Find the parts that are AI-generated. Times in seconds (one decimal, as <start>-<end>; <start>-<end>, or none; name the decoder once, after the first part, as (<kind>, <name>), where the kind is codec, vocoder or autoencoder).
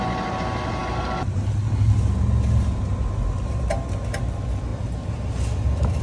none